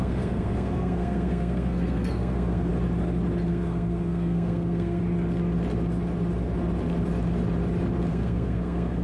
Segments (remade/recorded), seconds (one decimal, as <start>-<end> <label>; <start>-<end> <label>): 0.0-2.7 remade; 2.7-3.5 recorded; 3.5-5.0 remade; 5.0-8.1 recorded; 8.1-9.0 remade